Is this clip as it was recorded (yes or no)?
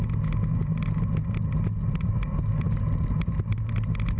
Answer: yes